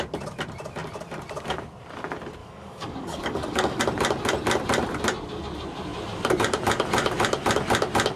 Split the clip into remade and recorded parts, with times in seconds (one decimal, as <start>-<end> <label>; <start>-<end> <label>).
0.0-2.4 recorded; 2.4-3.8 remade; 3.8-8.2 recorded